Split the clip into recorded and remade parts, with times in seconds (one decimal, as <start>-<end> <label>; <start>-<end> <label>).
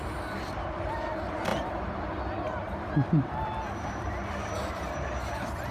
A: 0.0-1.5 recorded; 1.5-4.8 remade; 4.8-5.7 recorded